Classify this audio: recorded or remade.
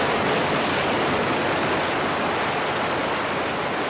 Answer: recorded